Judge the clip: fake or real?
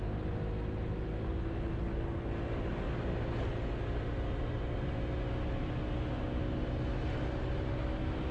real